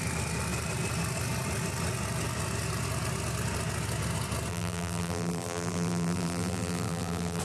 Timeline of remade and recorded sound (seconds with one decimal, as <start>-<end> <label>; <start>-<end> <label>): 0.0-4.5 recorded; 4.5-7.4 remade